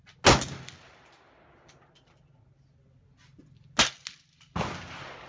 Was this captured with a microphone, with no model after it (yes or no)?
yes